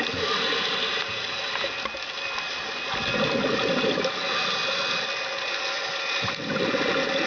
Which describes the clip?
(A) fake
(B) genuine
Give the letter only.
B